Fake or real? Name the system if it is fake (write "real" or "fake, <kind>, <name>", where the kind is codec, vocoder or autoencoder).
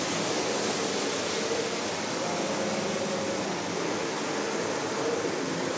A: real